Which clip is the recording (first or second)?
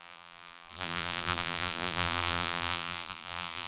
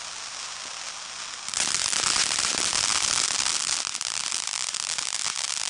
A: second